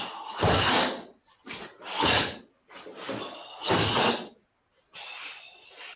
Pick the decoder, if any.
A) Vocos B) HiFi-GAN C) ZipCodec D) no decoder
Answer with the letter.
D